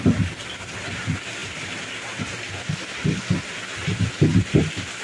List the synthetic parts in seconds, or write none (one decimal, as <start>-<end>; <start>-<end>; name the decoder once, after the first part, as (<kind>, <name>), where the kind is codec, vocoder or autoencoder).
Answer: none